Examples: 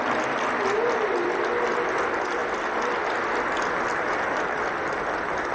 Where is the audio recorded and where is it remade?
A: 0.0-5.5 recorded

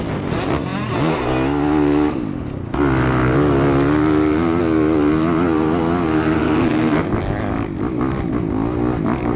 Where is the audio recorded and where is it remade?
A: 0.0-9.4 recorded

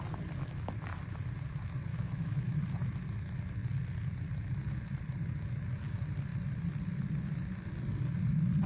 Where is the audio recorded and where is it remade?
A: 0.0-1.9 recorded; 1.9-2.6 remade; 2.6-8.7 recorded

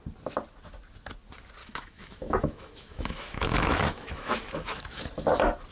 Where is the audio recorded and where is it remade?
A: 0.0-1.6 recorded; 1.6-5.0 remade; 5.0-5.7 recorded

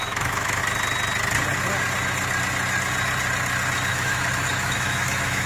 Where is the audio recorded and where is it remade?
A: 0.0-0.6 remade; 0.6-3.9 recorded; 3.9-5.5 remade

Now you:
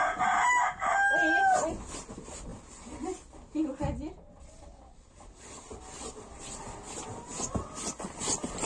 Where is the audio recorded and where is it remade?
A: 0.0-8.7 recorded

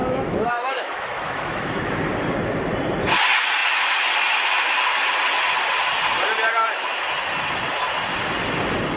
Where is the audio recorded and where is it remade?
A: 0.0-1.8 remade; 1.8-9.0 recorded

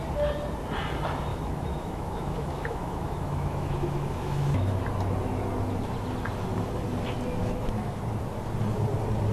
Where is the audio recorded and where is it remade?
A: 0.0-1.3 recorded; 1.3-4.8 remade; 4.8-7.4 recorded; 7.4-8.0 remade; 8.0-9.3 recorded